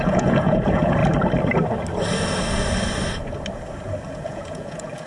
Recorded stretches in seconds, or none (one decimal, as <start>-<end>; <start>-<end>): 1.0-4.1